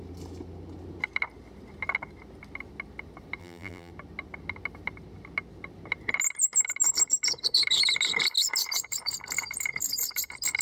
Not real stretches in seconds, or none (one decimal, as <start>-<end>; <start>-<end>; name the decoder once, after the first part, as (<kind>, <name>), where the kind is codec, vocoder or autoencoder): 3.4-3.9 (vocoder, BigVGAN v2)